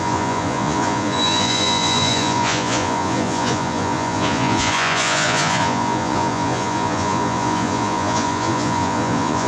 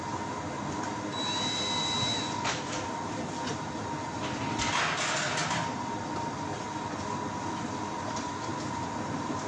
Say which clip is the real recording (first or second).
second